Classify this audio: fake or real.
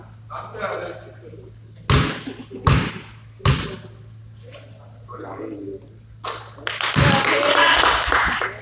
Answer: real